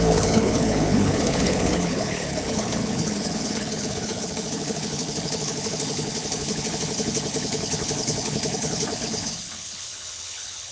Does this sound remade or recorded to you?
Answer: remade